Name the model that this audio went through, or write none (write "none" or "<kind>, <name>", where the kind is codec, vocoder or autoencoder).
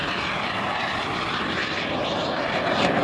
vocoder, BigVGAN v2